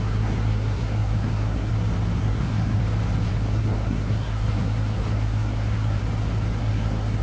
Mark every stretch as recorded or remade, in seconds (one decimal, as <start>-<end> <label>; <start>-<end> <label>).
0.0-1.7 remade; 1.7-2.2 recorded; 2.2-2.8 remade; 2.8-3.3 recorded; 3.3-6.0 remade; 6.0-6.6 recorded; 6.6-7.2 remade